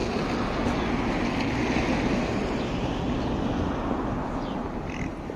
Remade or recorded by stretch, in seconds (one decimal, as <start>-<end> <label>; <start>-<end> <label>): 0.0-5.4 recorded